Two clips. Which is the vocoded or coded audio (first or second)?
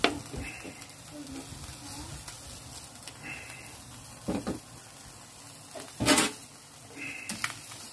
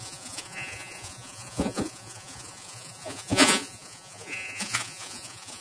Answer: second